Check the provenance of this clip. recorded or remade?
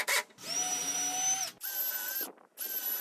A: recorded